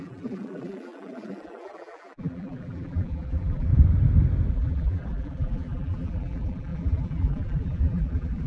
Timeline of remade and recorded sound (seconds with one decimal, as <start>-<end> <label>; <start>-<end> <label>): 0.0-3.7 remade; 3.7-4.5 recorded; 4.5-8.5 remade